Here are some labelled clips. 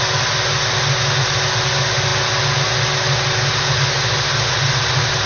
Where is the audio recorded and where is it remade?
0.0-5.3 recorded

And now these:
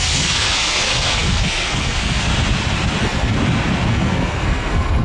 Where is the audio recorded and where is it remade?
0.0-2.3 remade; 2.3-3.0 recorded; 3.0-3.4 remade; 3.4-3.9 recorded; 3.9-5.0 remade

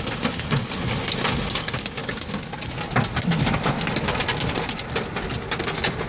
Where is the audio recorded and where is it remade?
0.0-6.1 recorded